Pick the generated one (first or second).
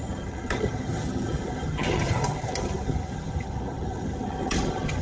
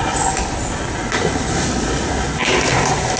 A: first